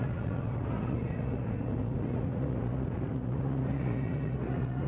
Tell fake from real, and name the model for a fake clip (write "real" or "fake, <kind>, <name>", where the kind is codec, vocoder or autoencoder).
fake, vocoder, Vocos